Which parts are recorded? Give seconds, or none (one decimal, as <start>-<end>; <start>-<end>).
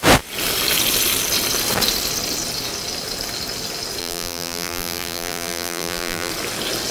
0.0-4.0; 6.3-6.9